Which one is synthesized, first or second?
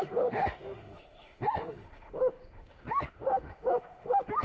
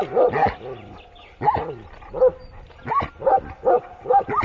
first